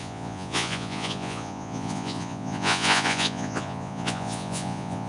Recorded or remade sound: remade